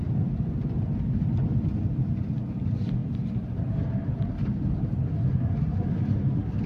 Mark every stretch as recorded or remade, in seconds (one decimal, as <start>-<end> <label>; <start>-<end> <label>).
0.0-6.7 recorded